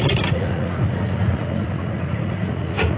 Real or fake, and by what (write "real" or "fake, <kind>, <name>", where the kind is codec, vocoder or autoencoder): fake, vocoder, Vocos